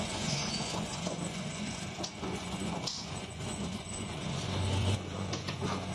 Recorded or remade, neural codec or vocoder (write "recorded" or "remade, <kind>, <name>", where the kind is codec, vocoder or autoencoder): remade, vocoder, Vocos